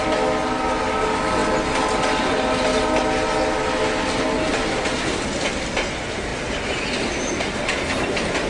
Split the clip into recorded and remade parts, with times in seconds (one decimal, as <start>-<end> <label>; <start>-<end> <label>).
0.0-8.5 recorded